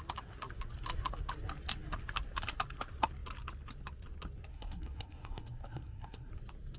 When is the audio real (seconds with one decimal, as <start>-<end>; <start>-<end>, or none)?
0.0-4.5; 6.3-6.8